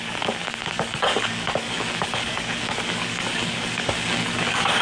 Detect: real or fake fake